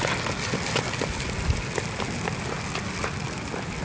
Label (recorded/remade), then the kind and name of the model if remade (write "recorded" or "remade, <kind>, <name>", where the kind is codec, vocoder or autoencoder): recorded